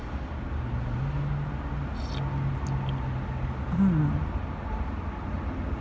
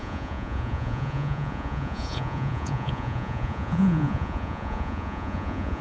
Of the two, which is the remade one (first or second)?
second